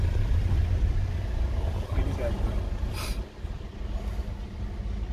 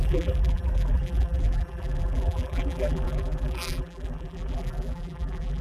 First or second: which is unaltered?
first